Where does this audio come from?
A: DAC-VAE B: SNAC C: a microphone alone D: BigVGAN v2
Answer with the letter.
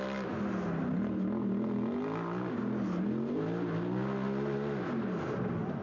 C